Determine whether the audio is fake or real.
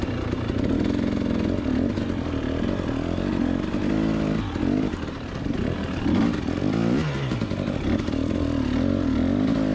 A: real